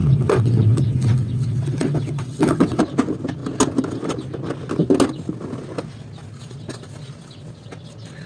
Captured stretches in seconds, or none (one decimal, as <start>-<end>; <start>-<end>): 2.8-8.3